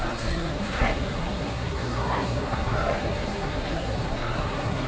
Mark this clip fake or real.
fake